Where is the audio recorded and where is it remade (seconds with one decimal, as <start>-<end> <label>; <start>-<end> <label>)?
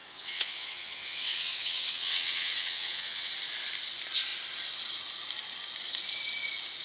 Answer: 0.0-3.3 remade; 3.3-6.8 recorded